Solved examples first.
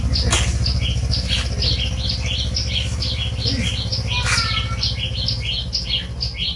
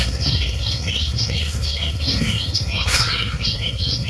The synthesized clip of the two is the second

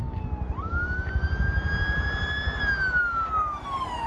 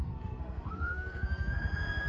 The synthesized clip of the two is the second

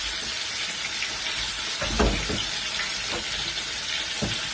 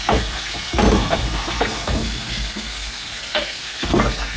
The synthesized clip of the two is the second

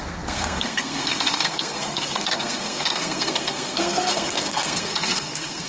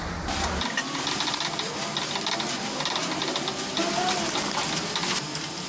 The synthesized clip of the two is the first